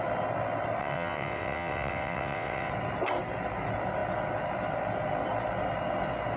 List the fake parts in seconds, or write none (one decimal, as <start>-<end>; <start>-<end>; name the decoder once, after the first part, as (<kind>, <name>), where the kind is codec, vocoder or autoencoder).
0.8-2.7 (vocoder, WaveNeXt)